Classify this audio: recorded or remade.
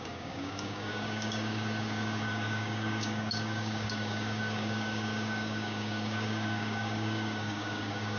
remade